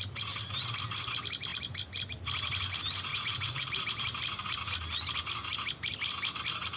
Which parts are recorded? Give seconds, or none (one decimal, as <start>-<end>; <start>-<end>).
0.0-3.1; 3.7-6.8